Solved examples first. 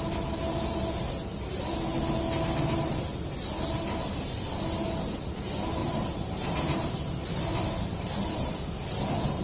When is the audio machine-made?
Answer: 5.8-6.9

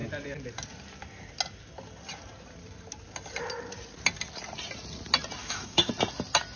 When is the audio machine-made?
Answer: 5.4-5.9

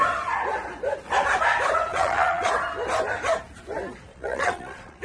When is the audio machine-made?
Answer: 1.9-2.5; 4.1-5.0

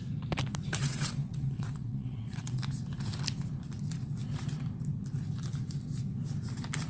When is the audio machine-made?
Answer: 0.8-2.6

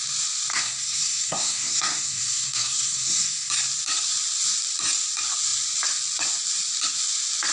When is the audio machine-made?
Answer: 0.5-3.5